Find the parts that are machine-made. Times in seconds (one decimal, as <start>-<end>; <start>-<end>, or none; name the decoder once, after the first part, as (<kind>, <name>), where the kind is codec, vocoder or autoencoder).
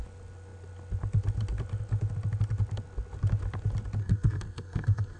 4.0-5.2 (codec, SNAC)